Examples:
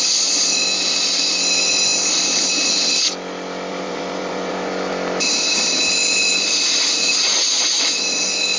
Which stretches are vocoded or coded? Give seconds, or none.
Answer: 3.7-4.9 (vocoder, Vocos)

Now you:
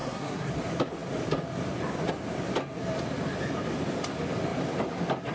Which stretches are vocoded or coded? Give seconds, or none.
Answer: 0.0-0.5 (codec, SNAC)

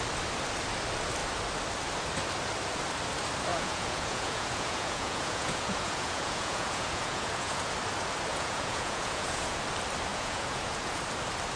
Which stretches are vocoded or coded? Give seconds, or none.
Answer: 3.5-7.7 (vocoder, Vocos); 8.3-9.6; 10.1-11.0

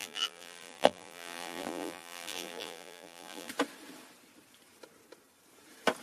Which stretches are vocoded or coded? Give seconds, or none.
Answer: 0.0-3.5 (vocoder, BigVGAN v2)

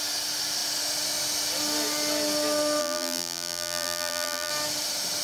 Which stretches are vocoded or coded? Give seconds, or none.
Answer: 2.8-4.5 (vocoder, BigVGAN v2)